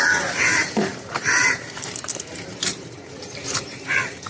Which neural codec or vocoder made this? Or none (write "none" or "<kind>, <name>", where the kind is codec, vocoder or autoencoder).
vocoder, BigVGAN v2